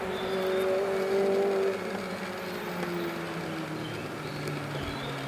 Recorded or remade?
recorded